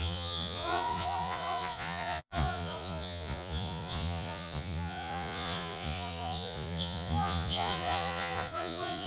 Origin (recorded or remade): remade